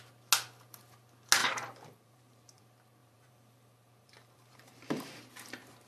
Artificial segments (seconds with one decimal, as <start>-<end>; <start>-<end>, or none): 1.4-2.6; 3.0-5.2